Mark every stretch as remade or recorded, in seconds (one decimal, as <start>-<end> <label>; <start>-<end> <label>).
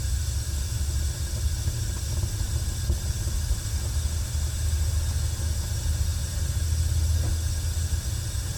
0.0-8.6 recorded